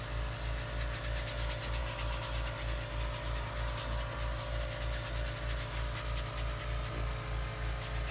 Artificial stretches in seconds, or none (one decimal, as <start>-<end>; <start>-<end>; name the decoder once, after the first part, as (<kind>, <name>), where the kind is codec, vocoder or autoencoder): none